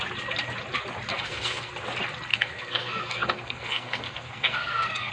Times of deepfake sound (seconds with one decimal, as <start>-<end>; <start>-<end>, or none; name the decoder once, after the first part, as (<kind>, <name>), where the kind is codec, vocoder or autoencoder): 1.1-1.7 (codec, SNAC); 2.3-5.1